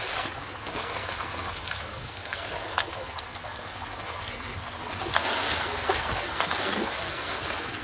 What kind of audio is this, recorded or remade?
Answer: remade